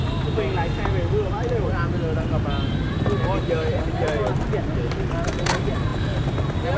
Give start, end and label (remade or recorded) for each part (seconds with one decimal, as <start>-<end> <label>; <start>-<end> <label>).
0.0-6.8 recorded